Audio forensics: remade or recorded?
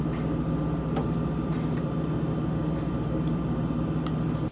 recorded